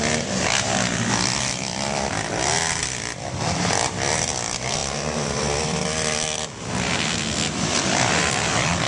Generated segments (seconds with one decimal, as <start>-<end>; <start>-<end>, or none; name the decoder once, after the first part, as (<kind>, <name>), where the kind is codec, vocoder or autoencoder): none

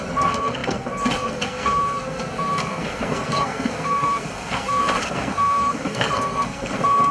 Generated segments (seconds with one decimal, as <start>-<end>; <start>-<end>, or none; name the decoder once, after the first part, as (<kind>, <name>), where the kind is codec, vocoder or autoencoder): 0.0-7.1 (codec, SNAC)

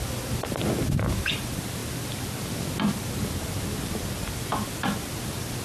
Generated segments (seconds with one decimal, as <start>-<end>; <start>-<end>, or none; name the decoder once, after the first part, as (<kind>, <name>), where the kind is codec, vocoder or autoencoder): none

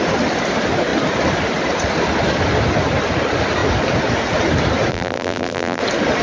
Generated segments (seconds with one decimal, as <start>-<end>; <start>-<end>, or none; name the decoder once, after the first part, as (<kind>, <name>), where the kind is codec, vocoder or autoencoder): 4.9-5.8 (vocoder, BigVGAN v2)

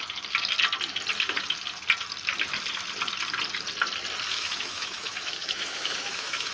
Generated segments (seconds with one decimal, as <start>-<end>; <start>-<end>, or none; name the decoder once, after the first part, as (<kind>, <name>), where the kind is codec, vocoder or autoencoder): 4.3-6.5 (autoencoder, DAC-VAE)

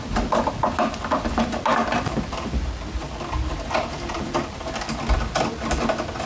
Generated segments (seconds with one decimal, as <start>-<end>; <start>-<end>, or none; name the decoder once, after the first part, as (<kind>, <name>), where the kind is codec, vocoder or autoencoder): none